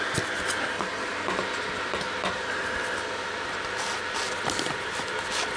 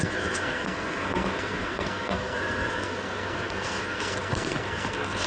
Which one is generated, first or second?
second